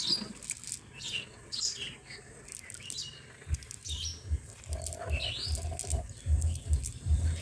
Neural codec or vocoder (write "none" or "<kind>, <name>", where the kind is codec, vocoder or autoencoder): none